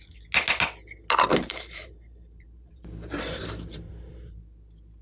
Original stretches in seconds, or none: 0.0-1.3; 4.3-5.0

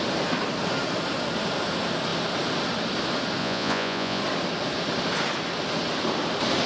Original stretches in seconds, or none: 0.0-3.4; 4.2-6.7

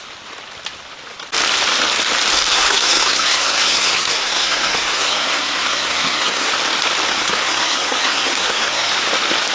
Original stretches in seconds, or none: 0.0-2.5; 6.5-7.1; 8.9-9.5